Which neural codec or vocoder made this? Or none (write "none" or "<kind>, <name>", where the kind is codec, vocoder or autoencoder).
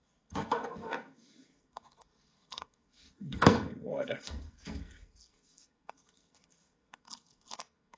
codec, SNAC